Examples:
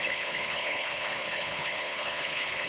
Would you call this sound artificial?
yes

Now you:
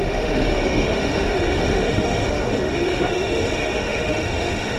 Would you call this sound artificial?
yes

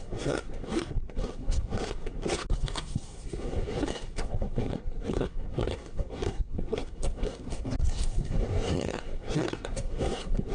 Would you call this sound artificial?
yes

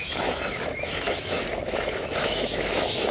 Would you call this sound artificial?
yes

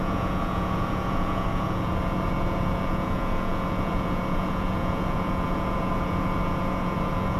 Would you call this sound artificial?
yes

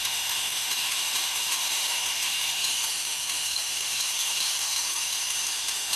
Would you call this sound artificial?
yes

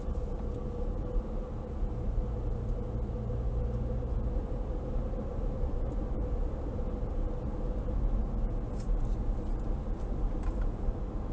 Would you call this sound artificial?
no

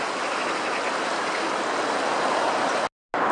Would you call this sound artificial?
no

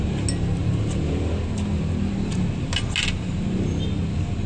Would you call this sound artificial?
no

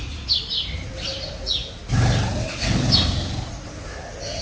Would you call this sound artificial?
no